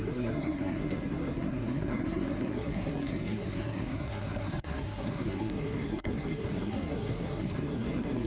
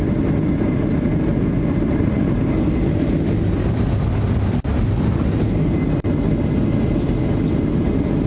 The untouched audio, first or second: second